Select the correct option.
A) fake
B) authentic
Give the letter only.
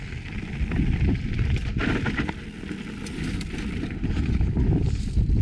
B